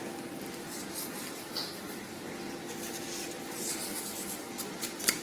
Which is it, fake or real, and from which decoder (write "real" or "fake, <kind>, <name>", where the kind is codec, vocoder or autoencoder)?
real